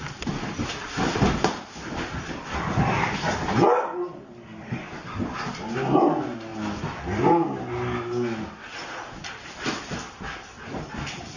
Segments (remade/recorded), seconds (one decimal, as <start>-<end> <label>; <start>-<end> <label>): 0.0-11.4 recorded